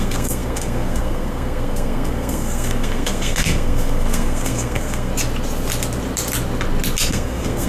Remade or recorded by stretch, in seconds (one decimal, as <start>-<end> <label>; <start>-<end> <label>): 0.0-5.1 remade; 5.1-7.1 recorded; 7.1-7.7 remade